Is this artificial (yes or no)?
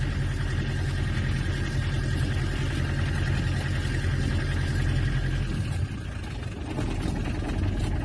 no